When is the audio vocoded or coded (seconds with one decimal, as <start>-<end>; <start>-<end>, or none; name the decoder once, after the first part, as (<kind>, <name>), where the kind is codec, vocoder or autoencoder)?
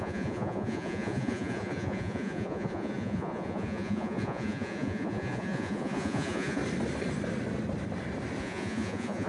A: 0.0-6.6 (vocoder, Vocos); 8.4-9.3